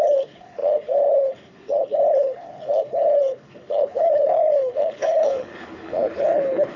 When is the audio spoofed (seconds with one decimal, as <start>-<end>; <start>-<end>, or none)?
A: 0.0-6.8